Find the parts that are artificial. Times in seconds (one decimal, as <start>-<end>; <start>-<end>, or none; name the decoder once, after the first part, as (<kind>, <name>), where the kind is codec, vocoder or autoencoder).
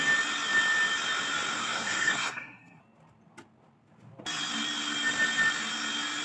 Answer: 1.6-2.8 (codec, SNAC)